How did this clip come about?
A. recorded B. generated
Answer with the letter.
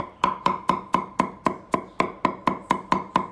A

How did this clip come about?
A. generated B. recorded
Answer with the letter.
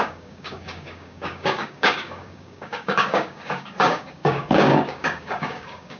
A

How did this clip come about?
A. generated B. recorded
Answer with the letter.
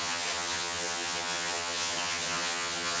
A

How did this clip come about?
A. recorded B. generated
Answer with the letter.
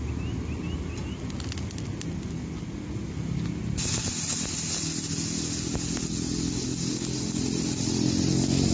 A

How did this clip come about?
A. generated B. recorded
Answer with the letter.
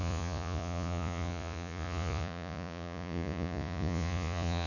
A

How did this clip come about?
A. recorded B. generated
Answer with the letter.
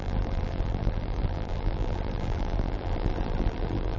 B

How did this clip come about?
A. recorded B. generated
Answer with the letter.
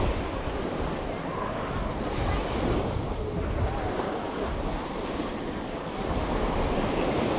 A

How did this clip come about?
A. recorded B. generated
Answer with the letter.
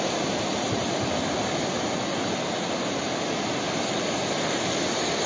A